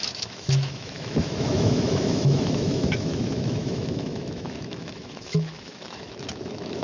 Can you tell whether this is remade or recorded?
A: remade